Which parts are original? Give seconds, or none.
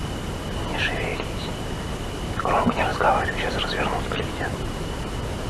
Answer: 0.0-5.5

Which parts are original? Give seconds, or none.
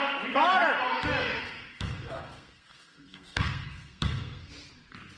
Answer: 0.0-1.4; 4.5-5.2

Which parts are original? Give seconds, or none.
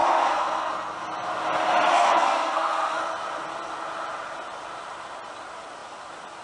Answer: 0.7-1.9; 3.0-6.4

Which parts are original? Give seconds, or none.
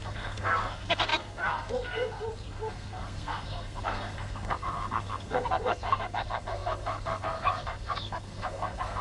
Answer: none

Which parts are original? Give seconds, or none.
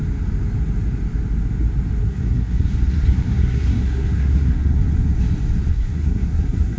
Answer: 0.0-2.0; 4.8-5.7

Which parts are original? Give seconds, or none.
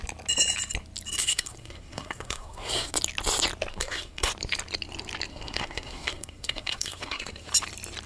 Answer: 0.0-1.2; 2.9-3.7; 4.3-5.3; 7.5-8.1